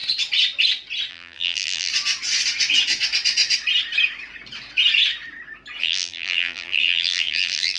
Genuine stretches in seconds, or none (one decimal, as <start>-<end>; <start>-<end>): 0.0-1.1; 1.9-5.8